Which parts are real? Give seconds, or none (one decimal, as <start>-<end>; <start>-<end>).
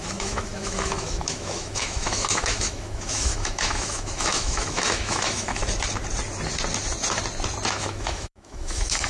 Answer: 5.6-7.7